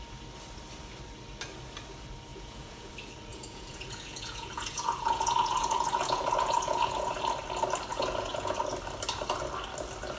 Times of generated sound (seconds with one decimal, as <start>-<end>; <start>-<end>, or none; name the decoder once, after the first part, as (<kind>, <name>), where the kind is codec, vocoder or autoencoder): 2.3-2.9 (vocoder, Vocos); 3.3-7.2; 7.9-8.6